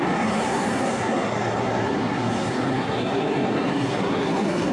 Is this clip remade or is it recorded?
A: remade